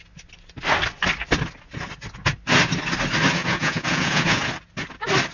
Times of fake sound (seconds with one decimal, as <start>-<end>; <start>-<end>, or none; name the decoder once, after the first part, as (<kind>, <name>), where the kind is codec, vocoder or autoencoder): 3.4-4.5 (vocoder, Vocos)